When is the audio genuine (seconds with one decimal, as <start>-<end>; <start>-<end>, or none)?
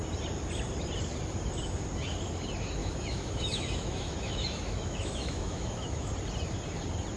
0.0-2.8; 6.1-7.2